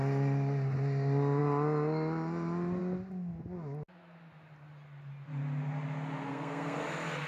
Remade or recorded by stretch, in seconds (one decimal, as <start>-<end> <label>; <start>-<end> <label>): 0.0-6.3 recorded; 6.3-6.8 remade; 6.8-7.3 recorded

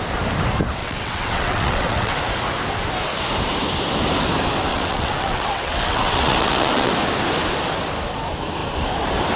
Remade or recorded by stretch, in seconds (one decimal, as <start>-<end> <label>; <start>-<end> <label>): 0.0-0.8 recorded; 0.8-2.2 remade; 2.2-4.7 recorded; 4.7-6.9 remade; 6.9-9.3 recorded

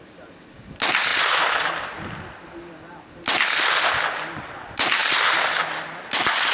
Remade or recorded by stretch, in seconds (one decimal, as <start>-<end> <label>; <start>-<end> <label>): 0.0-6.5 recorded

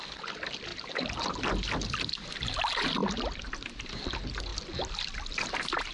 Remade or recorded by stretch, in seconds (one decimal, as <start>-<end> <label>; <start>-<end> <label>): 0.0-3.0 recorded; 3.0-3.6 remade; 3.6-4.5 recorded; 4.5-5.4 remade; 5.4-5.9 recorded

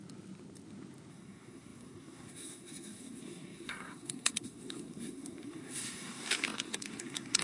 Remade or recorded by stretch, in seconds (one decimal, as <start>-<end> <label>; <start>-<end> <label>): 0.0-1.1 recorded; 1.1-7.4 remade

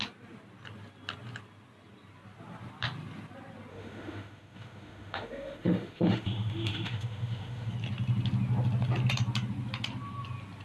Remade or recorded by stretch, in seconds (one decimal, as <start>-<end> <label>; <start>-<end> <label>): 0.0-3.7 recorded; 3.7-7.7 remade; 7.7-10.6 recorded

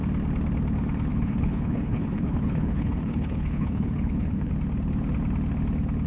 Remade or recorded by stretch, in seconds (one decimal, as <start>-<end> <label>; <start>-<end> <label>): 0.0-1.1 recorded; 1.1-4.5 remade; 4.5-6.1 recorded